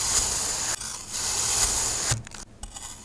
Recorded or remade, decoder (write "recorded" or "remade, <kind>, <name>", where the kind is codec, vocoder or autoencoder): recorded